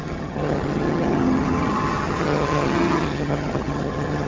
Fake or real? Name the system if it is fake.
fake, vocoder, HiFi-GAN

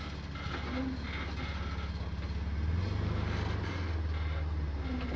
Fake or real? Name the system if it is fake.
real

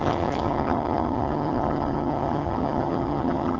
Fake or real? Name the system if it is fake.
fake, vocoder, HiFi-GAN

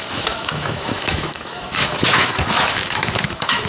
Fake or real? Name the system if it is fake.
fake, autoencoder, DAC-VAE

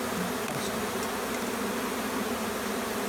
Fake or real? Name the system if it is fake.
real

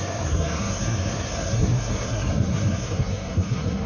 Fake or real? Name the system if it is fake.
fake, codec, SNAC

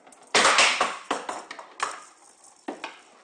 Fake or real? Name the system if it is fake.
real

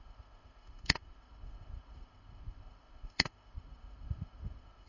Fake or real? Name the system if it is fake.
fake, autoencoder, DAC-VAE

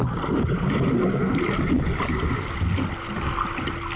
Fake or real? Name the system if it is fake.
real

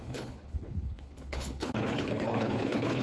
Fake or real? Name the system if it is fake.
fake, codec, HILCodec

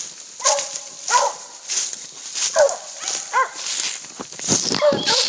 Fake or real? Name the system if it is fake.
real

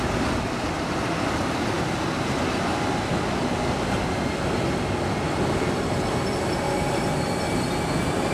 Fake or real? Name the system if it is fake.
real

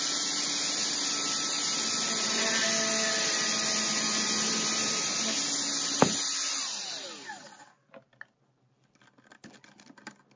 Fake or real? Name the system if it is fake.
real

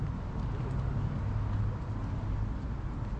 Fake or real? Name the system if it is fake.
real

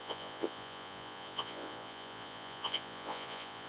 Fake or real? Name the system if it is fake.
fake, vocoder, Vocos